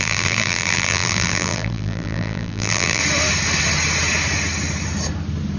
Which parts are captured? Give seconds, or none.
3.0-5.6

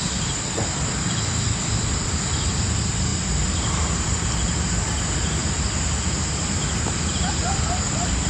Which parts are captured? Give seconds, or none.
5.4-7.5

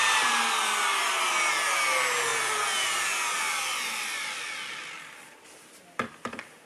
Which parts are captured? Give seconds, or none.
0.0-6.7